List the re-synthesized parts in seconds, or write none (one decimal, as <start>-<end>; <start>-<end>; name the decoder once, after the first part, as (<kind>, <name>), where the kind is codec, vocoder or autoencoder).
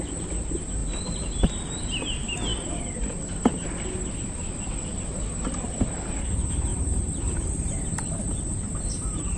0.8-1.8 (vocoder, BigVGAN v2); 6.7-9.4